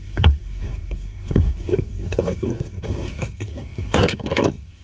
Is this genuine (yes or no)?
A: no